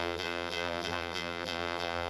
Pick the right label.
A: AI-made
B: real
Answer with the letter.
A